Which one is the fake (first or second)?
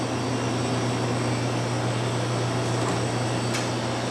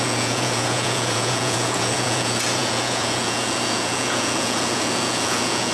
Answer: second